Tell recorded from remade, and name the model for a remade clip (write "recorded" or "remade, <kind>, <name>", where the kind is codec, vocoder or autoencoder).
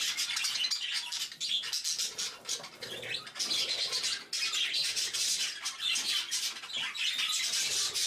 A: recorded